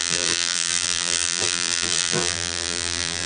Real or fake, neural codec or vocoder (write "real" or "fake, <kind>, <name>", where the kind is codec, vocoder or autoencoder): fake, vocoder, BigVGAN v2